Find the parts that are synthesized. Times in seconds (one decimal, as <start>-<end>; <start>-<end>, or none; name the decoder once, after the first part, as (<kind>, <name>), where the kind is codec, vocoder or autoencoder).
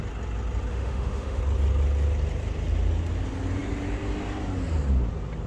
0.7-1.4 (autoencoder, DAC-VAE)